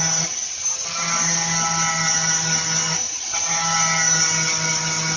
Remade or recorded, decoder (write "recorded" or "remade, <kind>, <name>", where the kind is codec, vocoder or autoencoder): recorded